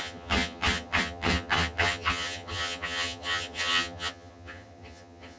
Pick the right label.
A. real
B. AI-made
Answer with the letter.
B